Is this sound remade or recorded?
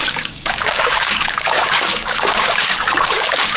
remade